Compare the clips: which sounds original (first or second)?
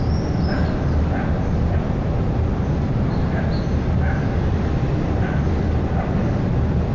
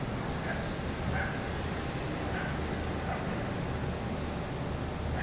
second